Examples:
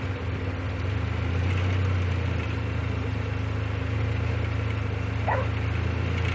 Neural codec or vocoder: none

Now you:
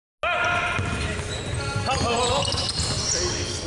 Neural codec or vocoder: none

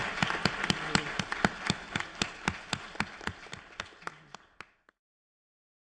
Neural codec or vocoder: none